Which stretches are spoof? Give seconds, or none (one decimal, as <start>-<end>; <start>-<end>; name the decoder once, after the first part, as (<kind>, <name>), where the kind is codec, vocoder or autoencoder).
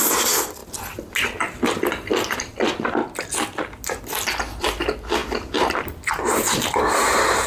none